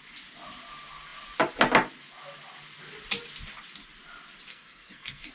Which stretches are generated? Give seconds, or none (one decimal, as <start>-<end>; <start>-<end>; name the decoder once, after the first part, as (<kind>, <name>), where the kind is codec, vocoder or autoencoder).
4.5-5.3 (codec, SNAC)